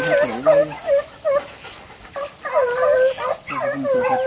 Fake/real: real